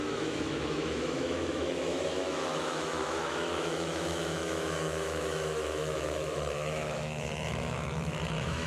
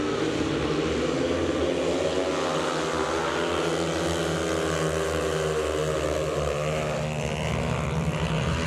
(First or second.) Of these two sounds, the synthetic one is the first